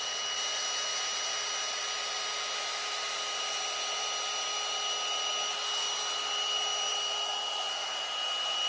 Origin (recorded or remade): recorded